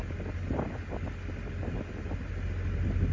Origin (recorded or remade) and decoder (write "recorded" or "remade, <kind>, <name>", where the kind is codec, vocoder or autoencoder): recorded